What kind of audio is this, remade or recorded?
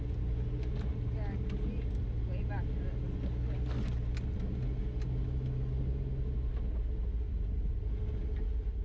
recorded